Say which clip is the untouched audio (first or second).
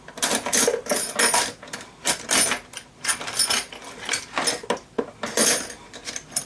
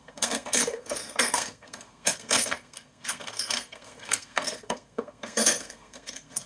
first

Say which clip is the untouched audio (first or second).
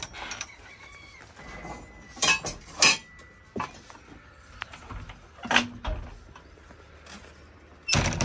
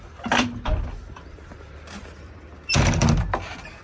first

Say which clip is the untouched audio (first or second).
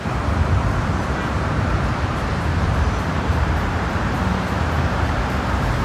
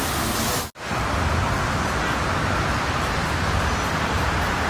second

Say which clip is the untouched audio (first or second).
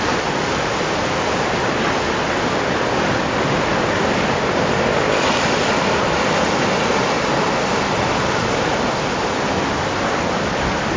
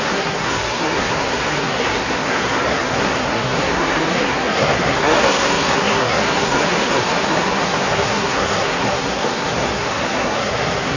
first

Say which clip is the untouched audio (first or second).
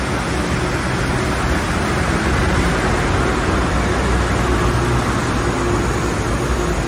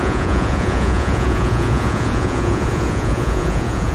first